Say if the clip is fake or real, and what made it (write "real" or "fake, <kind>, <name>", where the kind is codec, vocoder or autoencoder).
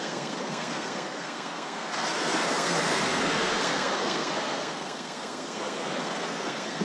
fake, codec, SNAC